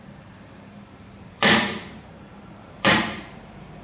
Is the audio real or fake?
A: fake